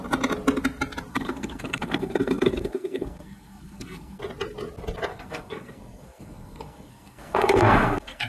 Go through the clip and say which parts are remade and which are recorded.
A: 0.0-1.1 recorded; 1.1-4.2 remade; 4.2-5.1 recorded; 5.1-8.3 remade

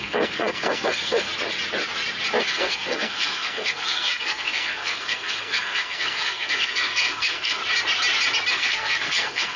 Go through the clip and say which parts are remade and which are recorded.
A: 0.0-1.3 remade; 1.3-2.4 recorded; 2.4-7.6 remade; 7.6-8.5 recorded; 8.5-9.6 remade